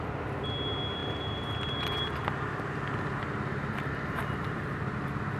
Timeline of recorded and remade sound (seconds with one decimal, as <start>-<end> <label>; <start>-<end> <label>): 0.0-1.0 recorded; 1.0-4.2 remade; 4.2-5.4 recorded